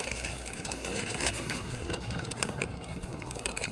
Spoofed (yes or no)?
yes